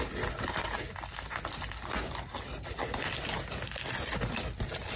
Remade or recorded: recorded